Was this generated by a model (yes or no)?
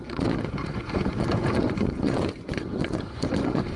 yes